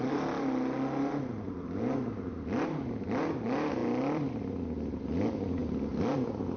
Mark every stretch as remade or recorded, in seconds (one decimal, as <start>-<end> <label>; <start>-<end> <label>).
0.0-6.6 recorded